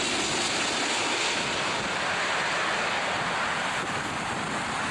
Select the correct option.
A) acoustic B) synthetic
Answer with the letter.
A